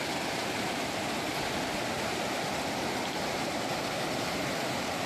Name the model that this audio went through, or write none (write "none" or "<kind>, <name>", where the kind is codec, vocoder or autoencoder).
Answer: none